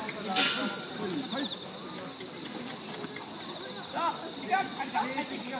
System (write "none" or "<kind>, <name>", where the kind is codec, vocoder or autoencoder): none